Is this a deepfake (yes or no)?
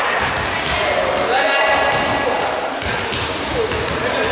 no